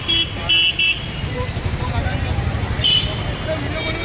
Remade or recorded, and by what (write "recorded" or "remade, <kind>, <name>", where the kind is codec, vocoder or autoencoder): recorded